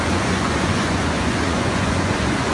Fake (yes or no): yes